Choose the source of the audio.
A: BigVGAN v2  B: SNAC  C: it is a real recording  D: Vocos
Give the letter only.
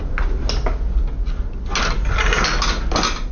C